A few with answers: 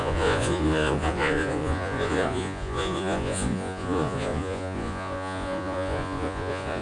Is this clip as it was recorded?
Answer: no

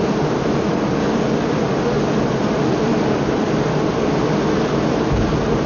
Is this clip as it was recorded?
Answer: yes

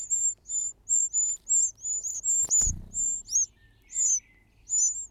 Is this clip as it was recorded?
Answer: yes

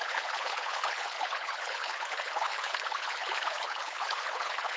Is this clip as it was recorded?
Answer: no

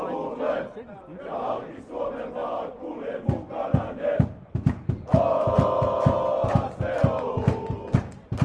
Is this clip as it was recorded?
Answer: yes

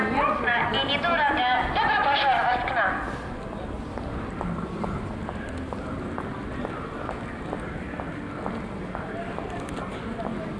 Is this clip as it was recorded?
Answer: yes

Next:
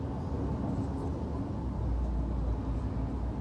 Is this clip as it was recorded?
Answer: yes